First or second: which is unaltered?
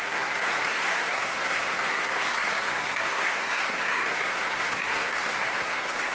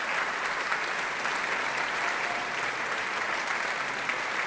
second